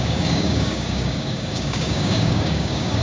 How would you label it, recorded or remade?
remade